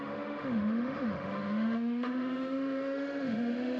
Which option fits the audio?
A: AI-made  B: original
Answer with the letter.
A